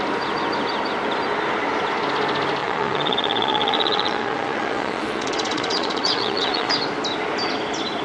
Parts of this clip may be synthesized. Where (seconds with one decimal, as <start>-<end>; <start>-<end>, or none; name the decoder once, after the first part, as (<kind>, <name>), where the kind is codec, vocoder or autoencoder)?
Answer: 2.6-6.7 (vocoder, Vocos)